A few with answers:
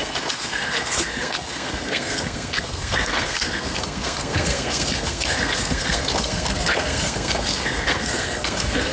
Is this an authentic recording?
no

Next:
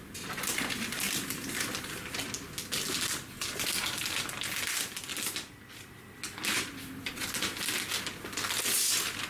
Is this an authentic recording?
yes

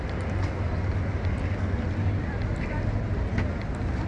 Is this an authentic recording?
yes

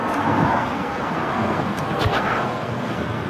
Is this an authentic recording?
no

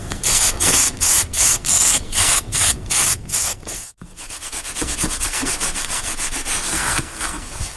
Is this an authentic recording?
no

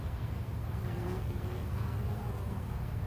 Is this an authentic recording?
no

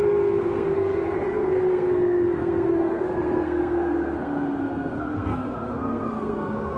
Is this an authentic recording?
no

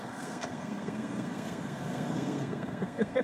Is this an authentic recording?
no